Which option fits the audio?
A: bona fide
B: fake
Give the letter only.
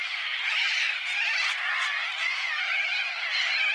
A